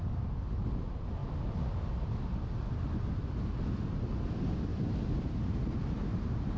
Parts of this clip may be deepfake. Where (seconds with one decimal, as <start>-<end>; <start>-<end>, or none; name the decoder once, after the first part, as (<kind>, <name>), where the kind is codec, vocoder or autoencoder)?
4.7-6.6 (vocoder, BigVGAN v2)